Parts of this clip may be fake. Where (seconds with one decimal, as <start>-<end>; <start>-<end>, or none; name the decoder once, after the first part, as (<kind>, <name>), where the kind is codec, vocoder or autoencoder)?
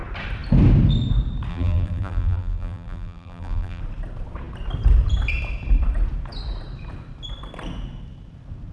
1.5-3.8 (vocoder, BigVGAN v2)